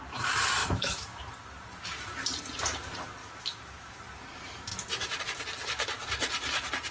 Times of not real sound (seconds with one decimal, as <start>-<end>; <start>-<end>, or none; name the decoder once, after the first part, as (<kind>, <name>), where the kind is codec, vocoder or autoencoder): 0.6-1.2 (autoencoder, DAC-VAE); 3.2-4.0